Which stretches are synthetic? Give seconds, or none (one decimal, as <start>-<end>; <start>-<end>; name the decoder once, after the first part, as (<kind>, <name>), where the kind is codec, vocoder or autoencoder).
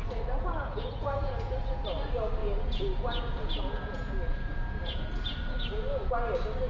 0.0-1.8 (vocoder, Vocos); 2.4-6.1